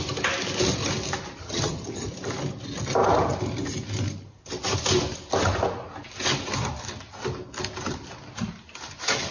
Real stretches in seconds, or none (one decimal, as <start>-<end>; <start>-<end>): 0.0-1.4; 2.1-9.3

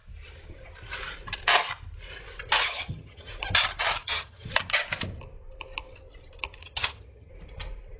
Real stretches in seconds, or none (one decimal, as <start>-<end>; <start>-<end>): 0.0-2.6; 3.3-4.0; 4.5-6.6; 7.3-8.0

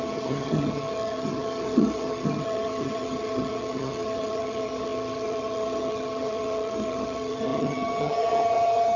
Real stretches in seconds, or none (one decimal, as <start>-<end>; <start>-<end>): none